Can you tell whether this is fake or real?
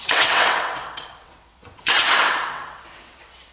fake